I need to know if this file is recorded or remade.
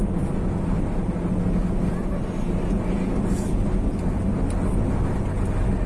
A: recorded